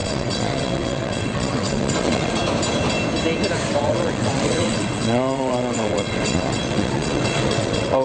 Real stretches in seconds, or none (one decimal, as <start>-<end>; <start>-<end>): 2.4-3.8